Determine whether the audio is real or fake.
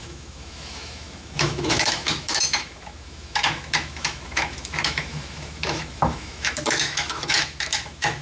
fake